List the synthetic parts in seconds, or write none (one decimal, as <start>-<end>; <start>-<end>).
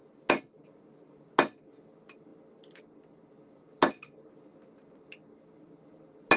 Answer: none